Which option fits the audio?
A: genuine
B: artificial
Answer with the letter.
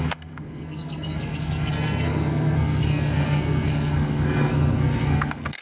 B